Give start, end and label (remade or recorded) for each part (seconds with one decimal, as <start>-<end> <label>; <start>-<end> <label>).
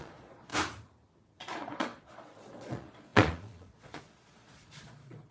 0.0-0.5 remade; 0.5-1.4 recorded; 1.4-5.3 remade